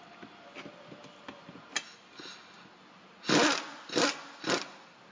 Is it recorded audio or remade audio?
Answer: recorded